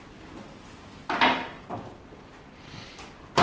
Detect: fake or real real